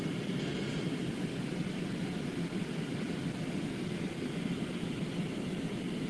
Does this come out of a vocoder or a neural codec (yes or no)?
yes